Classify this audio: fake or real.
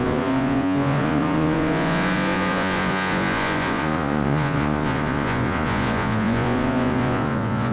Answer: fake